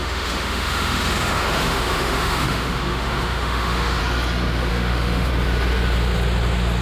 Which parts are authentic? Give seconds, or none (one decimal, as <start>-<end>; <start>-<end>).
4.0-4.7; 5.3-6.8